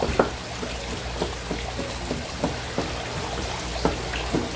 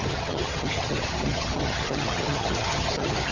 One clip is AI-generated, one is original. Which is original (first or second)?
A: first